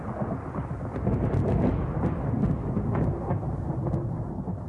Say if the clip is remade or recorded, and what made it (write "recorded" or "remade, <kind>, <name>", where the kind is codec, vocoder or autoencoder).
recorded